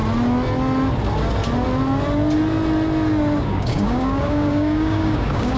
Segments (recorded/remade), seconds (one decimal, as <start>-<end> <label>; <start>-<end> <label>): 0.0-3.4 recorded; 3.4-5.6 remade